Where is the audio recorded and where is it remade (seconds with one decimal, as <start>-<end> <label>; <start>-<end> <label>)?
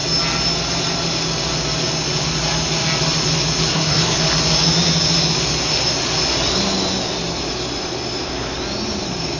0.0-3.7 recorded; 3.7-4.2 remade; 4.2-9.4 recorded